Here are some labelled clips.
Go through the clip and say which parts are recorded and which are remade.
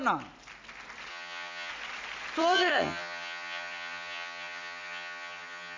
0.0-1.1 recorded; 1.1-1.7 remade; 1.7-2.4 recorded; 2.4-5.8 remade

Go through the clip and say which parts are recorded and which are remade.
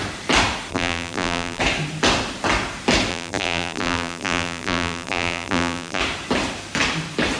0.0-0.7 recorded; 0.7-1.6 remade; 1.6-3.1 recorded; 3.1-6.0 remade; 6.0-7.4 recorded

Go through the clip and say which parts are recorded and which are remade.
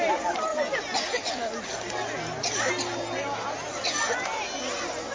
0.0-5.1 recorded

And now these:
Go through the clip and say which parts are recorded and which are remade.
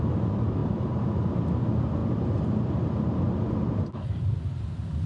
0.0-0.6 recorded; 0.6-1.4 remade; 1.4-5.1 recorded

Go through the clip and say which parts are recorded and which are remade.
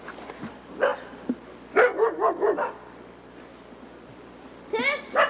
0.0-5.3 recorded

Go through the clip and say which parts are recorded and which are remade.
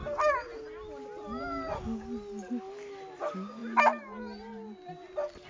0.0-5.5 recorded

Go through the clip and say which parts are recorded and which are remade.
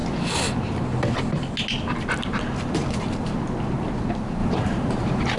0.0-4.4 recorded; 4.4-5.4 remade